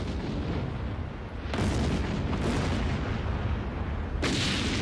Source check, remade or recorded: recorded